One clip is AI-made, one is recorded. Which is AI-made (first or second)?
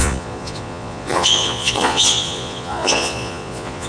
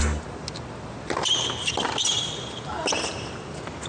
first